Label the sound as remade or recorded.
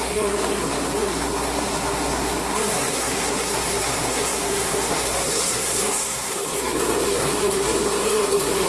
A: remade